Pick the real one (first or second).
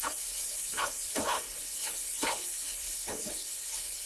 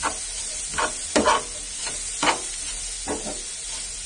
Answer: second